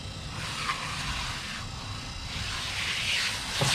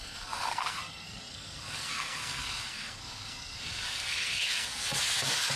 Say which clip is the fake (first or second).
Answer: second